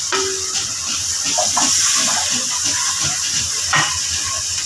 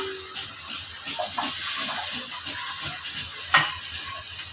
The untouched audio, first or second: second